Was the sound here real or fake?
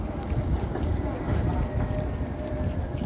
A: real